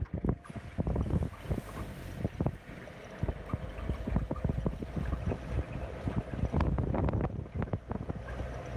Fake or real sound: real